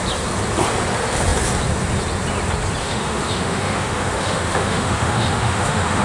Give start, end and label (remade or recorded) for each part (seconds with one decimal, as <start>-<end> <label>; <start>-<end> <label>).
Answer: 0.0-2.8 recorded; 2.8-6.0 remade